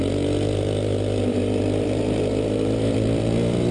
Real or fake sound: fake